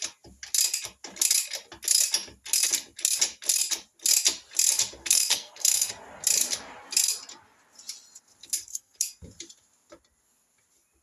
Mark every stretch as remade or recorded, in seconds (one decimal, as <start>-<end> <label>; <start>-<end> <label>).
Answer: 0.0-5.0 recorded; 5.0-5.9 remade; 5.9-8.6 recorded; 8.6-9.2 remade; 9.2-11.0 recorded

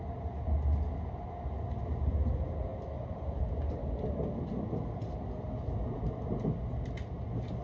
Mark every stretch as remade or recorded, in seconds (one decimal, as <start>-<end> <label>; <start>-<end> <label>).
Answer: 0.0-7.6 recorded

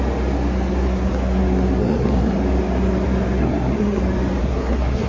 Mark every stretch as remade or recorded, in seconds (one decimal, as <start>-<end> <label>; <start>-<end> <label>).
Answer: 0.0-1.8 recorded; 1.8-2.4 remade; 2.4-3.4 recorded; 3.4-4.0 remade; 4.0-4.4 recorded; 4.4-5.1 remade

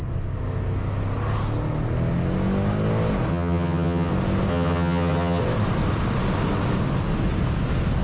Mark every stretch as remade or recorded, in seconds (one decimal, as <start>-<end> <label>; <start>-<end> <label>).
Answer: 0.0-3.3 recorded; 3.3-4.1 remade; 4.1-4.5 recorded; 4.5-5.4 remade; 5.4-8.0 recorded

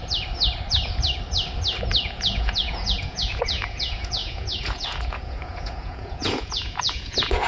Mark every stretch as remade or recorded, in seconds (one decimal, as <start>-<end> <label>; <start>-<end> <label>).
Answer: 0.0-1.8 recorded; 1.8-7.5 remade

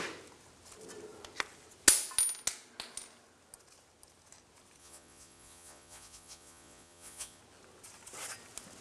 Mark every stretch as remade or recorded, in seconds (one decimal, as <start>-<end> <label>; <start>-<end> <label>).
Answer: 0.0-4.8 recorded; 4.8-7.4 remade; 7.4-8.8 recorded

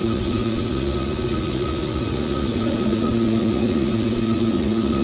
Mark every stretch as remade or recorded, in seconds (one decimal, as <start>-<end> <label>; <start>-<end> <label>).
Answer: 0.0-5.0 remade

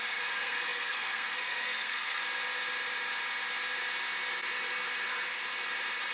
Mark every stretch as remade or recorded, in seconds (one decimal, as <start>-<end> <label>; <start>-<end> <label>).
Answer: 0.0-2.2 remade; 2.2-6.1 recorded